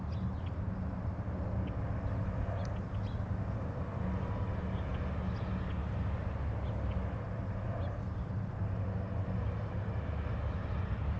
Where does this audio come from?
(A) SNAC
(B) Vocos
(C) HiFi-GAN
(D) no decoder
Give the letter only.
D